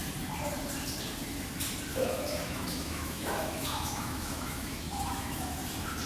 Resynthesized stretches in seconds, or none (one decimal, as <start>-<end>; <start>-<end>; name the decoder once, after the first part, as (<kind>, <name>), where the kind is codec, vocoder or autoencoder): 1.9-5.6 (autoencoder, DAC-VAE)